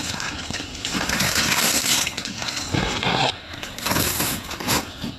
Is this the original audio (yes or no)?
no